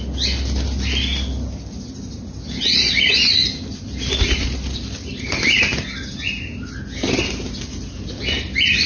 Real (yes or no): yes